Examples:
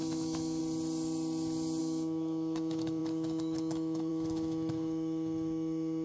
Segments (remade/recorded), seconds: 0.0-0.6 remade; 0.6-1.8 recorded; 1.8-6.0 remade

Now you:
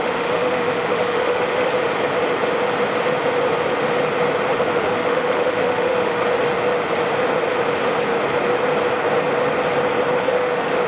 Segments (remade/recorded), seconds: 0.0-1.7 remade; 1.7-4.5 recorded; 4.5-6.2 remade; 6.2-10.2 recorded; 10.2-10.9 remade

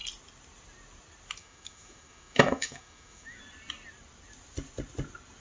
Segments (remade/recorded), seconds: 0.0-1.4 recorded; 1.4-3.4 remade; 3.4-5.4 recorded

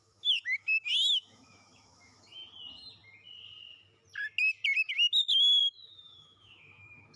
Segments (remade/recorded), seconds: 0.0-2.4 remade; 2.4-4.9 recorded; 4.9-7.2 remade